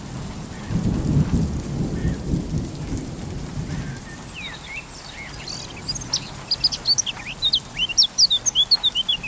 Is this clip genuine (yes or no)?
yes